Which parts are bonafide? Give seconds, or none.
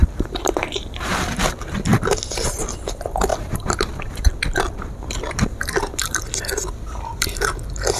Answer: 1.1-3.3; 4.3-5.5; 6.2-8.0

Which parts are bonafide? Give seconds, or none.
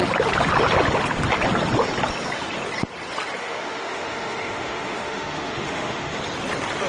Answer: 0.0-3.4; 6.2-6.9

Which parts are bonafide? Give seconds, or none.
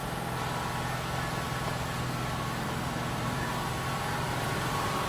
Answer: 0.0-3.1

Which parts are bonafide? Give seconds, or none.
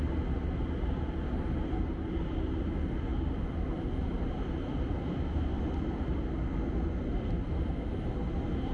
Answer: 0.0-8.7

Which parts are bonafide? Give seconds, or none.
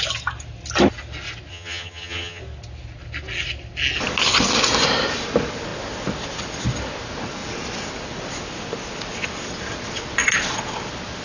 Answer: 0.0-1.5; 2.4-11.2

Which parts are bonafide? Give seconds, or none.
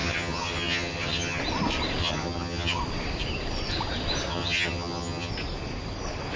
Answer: 1.4-2.0; 2.8-4.3; 5.3-6.4